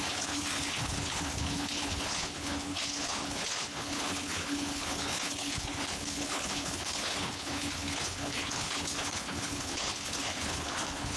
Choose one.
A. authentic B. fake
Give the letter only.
B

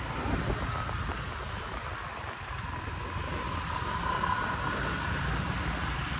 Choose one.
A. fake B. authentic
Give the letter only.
B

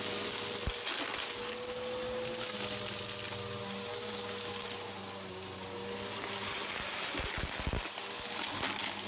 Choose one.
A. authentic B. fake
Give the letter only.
A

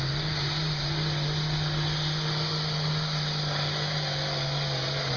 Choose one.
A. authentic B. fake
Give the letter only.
A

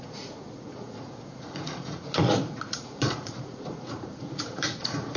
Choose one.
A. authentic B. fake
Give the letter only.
B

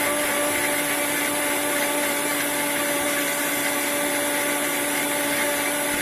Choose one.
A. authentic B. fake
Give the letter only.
A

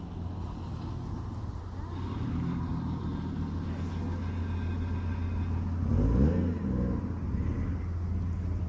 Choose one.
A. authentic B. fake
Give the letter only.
A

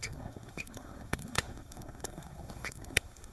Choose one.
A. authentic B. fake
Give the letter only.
B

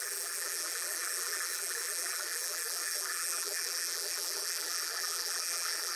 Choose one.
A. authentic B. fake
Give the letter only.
B